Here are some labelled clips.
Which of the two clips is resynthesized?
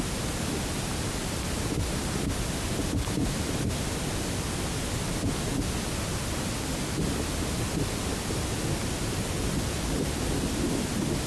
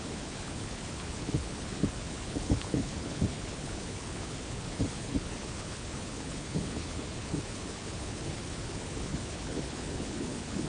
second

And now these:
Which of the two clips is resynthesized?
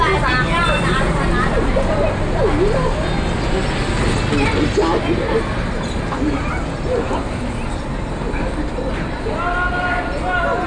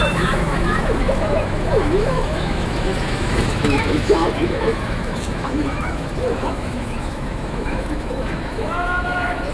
second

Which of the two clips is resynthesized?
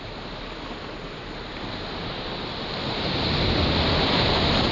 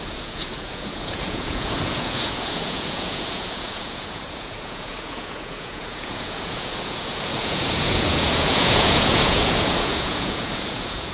second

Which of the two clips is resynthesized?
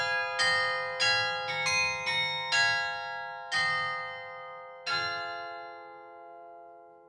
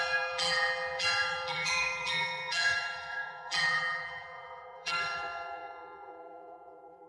second